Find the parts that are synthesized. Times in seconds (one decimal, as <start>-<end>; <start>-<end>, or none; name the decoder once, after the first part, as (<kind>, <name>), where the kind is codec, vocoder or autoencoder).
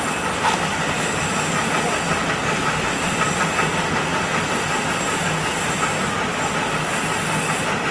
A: none